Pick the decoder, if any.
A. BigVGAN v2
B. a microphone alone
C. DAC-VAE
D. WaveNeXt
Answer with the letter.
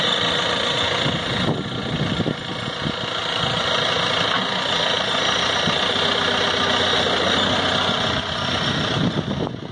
B